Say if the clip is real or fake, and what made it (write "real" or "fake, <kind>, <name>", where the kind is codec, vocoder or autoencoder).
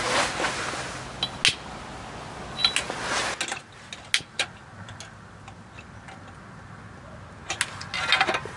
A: real